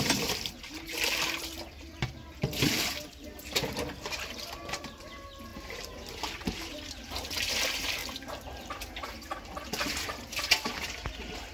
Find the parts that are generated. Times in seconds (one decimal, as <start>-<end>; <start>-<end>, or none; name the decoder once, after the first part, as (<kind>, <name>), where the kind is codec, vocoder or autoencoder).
0.0-11.5 (vocoder, BigVGAN v2)